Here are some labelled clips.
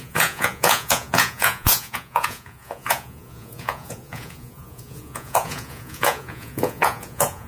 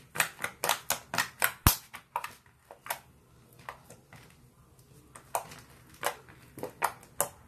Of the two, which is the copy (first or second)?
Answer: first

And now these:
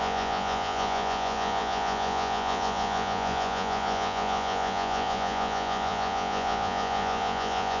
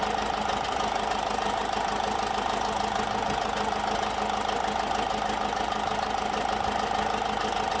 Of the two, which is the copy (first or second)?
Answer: first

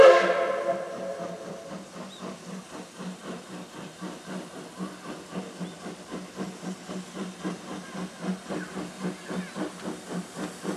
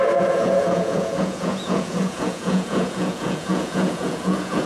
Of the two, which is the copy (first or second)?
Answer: second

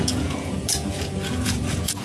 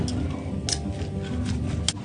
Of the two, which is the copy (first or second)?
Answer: first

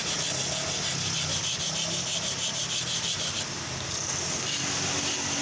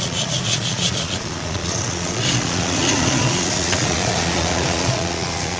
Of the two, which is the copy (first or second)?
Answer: second